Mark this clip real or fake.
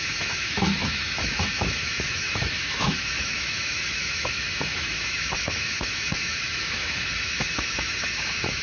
fake